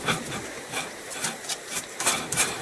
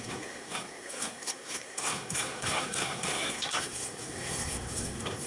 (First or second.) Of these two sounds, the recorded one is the first